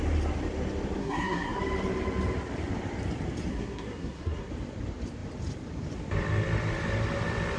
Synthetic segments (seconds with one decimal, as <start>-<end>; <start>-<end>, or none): 1.0-1.6; 3.5-4.5